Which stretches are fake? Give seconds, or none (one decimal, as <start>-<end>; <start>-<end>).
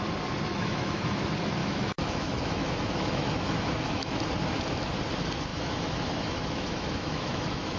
0.5-1.2; 1.6-4.2; 5.5-7.8